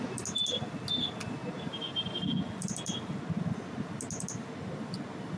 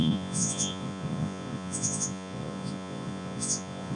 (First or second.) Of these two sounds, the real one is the first